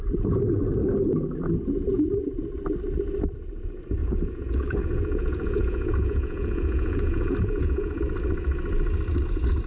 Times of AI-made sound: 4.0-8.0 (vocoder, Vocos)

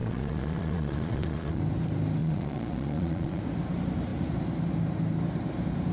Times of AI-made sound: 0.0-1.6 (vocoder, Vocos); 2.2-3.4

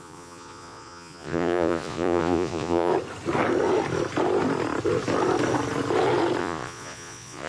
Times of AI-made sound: 0.0-2.9 (vocoder, Vocos); 6.4-7.5